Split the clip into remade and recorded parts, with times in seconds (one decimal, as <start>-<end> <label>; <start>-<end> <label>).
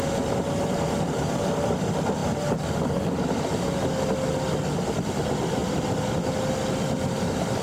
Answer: 0.0-7.6 recorded